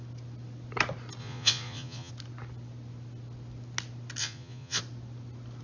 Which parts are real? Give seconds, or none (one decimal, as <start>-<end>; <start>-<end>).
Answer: 0.0-1.2; 2.1-4.2; 4.8-5.6